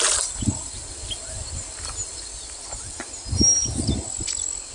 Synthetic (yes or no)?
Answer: no